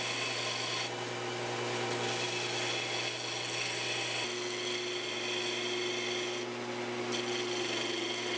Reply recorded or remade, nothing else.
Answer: recorded